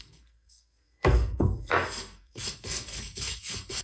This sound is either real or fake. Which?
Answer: fake